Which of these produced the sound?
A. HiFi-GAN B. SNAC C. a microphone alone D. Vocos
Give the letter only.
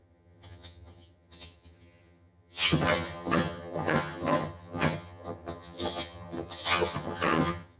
A